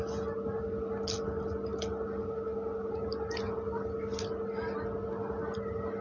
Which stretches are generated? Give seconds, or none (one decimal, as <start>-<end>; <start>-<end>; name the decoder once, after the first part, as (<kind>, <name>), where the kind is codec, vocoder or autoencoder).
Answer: none